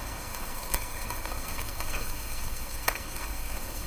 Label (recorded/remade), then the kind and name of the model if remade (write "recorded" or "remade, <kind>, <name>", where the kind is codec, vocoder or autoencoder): remade, codec, SNAC